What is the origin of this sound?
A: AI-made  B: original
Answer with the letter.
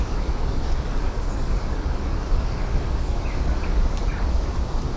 A